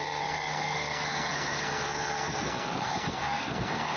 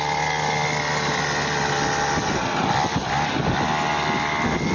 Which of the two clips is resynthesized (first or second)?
first